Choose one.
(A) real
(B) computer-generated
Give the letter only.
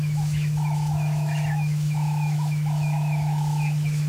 B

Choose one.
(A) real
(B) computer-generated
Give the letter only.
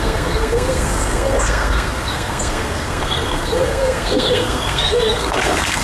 B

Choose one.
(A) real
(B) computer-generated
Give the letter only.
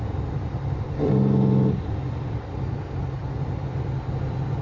B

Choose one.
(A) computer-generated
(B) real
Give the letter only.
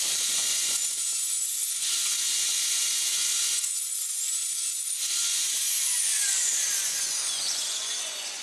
A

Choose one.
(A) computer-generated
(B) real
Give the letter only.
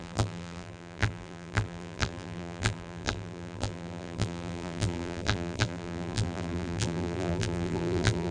A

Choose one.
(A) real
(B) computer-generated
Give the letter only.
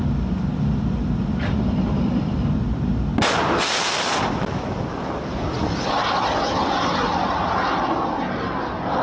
A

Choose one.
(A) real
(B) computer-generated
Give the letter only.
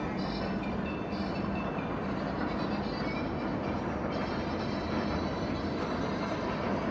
A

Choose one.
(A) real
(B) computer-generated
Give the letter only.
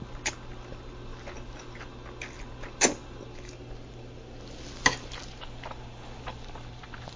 A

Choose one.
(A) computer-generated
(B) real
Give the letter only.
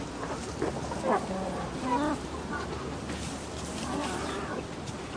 B